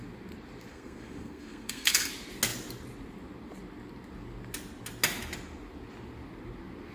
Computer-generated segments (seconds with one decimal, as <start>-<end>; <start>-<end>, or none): 0.7-2.1